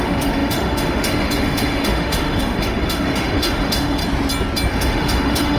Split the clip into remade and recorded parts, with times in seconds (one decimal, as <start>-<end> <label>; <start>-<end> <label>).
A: 0.0-4.0 remade; 4.0-4.7 recorded; 4.7-5.6 remade